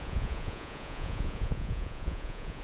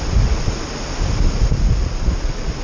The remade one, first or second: first